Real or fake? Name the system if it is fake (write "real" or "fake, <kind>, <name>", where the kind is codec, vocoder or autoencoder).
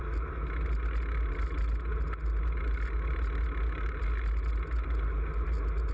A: real